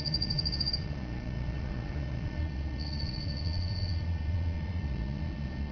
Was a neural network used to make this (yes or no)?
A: yes